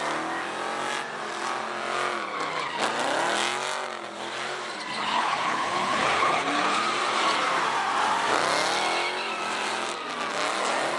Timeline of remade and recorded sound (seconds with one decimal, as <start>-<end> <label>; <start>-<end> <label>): 0.0-5.0 recorded; 5.0-6.8 remade; 6.8-11.0 recorded